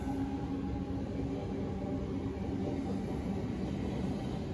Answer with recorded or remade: recorded